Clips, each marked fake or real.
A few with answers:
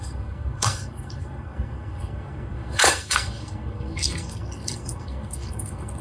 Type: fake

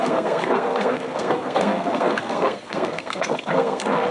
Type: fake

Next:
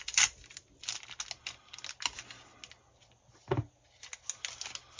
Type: real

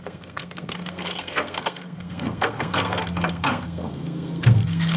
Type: fake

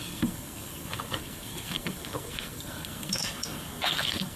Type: fake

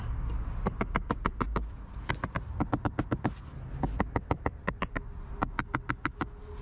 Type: real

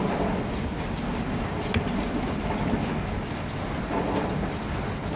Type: real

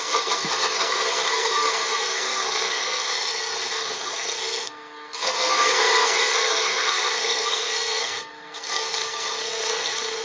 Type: fake